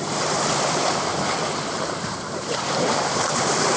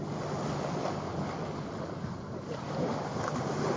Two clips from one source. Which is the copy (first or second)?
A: first